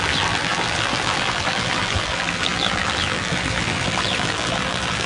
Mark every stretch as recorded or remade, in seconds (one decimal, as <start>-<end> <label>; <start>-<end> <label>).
0.0-5.1 remade